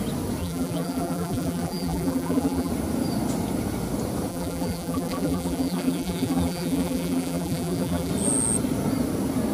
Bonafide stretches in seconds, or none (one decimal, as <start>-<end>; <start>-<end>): 0.0-0.4; 2.7-4.3; 8.1-9.5

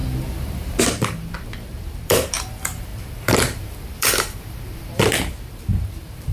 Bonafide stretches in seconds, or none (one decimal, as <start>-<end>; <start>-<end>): none

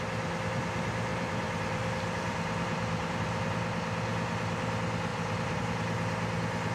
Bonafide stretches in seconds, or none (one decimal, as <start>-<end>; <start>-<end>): 0.0-1.1; 3.5-5.1; 5.6-6.7

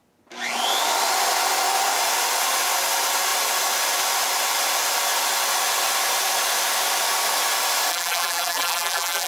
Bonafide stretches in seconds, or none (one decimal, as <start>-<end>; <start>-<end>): 0.0-7.9